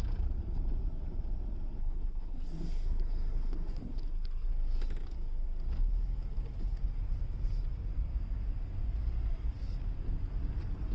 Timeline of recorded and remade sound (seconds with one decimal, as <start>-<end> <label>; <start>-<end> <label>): 0.0-1.8 recorded; 1.8-4.5 remade; 4.5-10.9 recorded